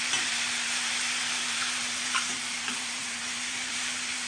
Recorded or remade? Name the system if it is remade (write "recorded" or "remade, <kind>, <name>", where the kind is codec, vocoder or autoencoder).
remade, vocoder, BigVGAN v2